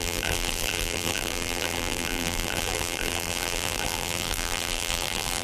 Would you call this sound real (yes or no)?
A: no